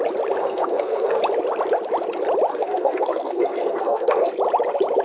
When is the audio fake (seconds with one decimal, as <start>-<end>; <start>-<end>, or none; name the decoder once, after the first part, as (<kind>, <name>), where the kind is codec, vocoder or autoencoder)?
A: 0.4-1.2 (codec, SNAC); 2.5-4.3